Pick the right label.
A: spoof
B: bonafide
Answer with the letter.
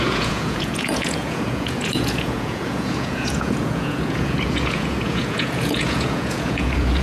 A